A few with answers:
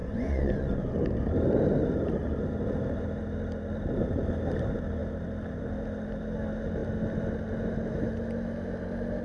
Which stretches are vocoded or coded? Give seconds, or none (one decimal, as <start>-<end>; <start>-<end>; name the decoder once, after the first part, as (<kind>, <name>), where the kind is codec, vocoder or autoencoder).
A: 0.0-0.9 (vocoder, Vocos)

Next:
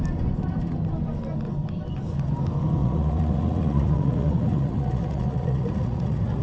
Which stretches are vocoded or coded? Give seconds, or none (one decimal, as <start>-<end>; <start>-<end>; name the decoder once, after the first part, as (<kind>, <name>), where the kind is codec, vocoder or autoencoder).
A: 2.8-6.4 (vocoder, Vocos)

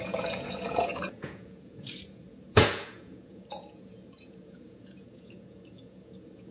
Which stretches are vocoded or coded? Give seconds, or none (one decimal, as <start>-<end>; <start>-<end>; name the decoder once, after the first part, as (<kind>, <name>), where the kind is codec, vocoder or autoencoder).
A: 0.0-6.5 (vocoder, Vocos)